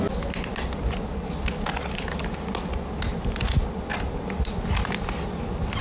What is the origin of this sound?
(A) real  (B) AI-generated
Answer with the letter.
A